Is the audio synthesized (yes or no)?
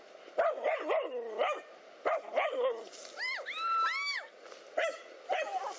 no